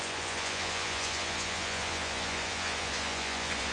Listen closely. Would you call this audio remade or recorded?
remade